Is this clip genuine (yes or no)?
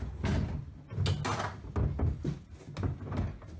yes